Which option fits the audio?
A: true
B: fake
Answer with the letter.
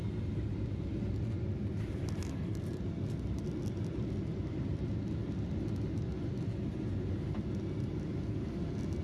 A